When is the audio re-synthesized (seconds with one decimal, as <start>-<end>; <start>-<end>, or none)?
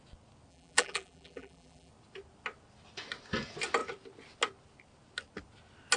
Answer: 0.5-1.9